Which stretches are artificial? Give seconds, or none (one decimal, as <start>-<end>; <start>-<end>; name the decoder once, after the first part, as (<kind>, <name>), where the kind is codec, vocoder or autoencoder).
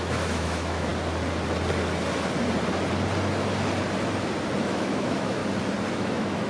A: 0.0-0.9 (autoencoder, DAC-VAE); 4.6-5.4; 5.9-6.5